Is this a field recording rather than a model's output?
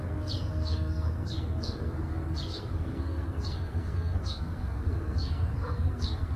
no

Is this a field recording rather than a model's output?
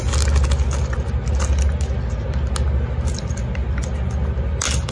yes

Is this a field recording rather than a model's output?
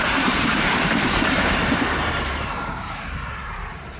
no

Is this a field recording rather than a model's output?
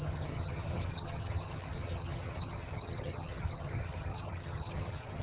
no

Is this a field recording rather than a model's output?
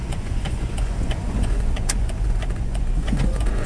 no